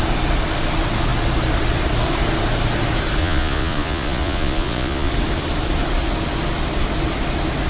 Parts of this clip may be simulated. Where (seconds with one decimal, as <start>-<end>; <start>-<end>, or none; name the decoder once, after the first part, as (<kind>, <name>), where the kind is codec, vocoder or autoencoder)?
3.2-5.1 (vocoder, Vocos)